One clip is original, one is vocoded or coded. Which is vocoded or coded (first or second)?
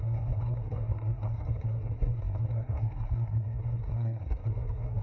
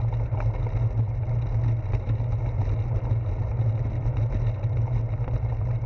first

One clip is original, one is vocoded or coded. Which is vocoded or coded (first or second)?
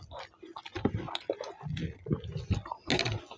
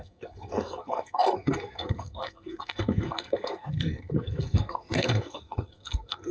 second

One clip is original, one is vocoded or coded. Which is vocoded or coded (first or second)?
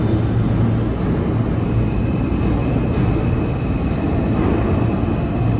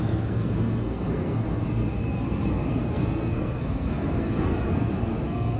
second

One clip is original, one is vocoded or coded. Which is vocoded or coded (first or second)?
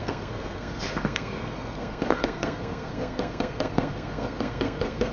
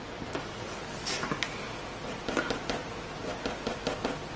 first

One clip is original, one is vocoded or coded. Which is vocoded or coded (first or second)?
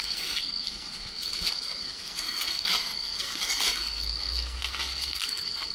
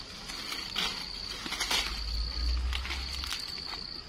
first